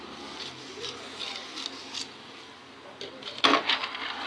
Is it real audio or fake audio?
real